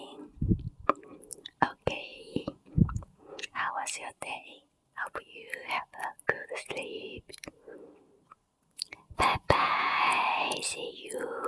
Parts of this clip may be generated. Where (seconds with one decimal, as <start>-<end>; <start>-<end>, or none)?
2.1-3.7; 6.4-6.9; 9.3-10.2